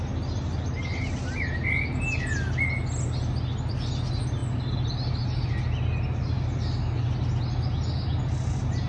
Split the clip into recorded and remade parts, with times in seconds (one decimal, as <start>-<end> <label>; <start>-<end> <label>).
0.0-8.9 recorded